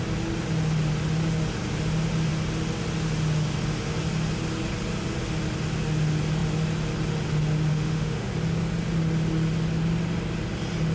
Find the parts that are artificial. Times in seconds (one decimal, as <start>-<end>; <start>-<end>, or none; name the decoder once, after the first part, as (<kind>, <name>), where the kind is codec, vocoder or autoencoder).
7.7-8.3 (autoencoder, DAC-VAE)